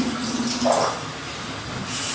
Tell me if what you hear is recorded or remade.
recorded